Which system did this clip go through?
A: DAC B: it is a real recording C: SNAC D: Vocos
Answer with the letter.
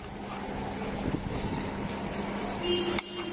B